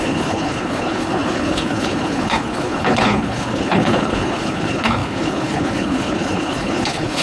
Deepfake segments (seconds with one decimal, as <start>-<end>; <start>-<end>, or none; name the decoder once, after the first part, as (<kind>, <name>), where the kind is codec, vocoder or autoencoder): 0.0-7.2 (codec, HILCodec)